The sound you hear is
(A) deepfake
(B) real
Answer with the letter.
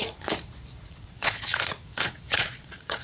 A